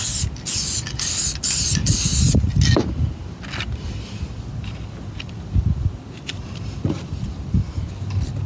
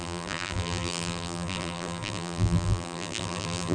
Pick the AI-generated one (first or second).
second